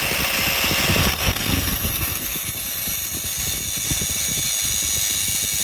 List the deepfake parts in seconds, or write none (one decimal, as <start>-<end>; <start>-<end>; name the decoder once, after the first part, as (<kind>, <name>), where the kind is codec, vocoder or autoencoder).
1.0-2.5 (codec, SNAC)